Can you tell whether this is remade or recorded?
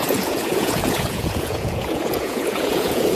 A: remade